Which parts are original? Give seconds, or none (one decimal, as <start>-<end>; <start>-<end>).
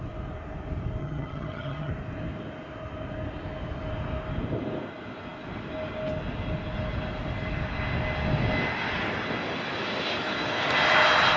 0.0-1.0; 1.9-11.4